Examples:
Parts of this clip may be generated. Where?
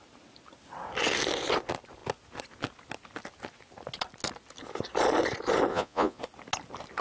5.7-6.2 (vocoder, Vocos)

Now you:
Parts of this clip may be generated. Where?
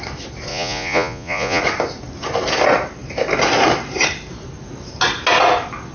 0.5-1.6 (vocoder, Vocos)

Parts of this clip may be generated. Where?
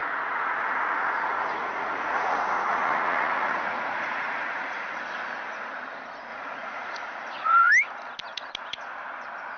0.0-5.0 (vocoder, Vocos); 6.3-7.7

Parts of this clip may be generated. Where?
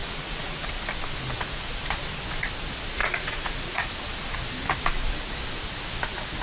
0.0-0.7 (vocoder, Vocos); 3.0-3.8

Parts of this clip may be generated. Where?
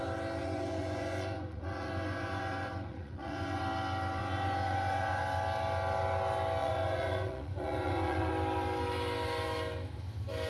0.4-3.6 (vocoder, Vocos); 4.2-5.2; 6.6-8.3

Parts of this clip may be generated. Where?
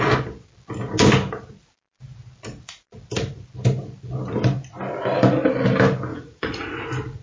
6.1-6.8 (vocoder, Vocos)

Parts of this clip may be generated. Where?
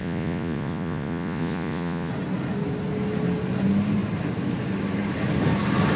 0.0-2.1 (vocoder, Vocos)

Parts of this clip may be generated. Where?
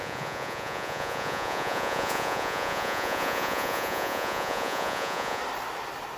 0.0-5.4 (vocoder, Vocos)